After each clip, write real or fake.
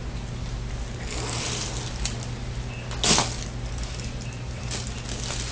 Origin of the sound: real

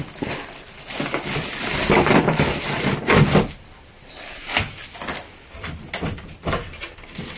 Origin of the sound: real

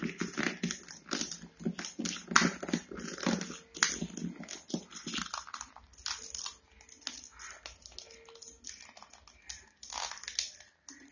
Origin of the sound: real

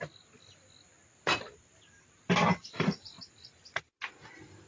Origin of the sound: real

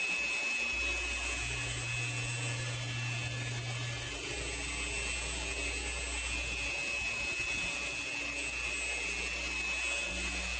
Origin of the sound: real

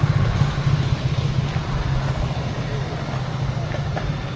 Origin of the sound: real